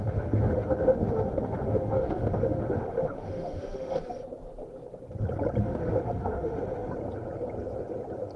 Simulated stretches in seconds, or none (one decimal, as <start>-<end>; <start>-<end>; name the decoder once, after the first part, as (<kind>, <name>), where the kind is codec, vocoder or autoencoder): 0.0-4.1 (autoencoder, DAC-VAE); 5.6-6.9